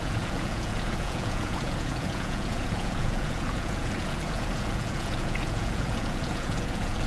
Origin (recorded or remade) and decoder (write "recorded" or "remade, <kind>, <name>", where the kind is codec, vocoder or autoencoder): remade, vocoder, Vocos